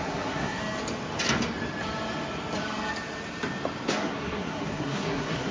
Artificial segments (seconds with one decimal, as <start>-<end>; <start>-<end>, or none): 0.0-0.6; 3.9-5.5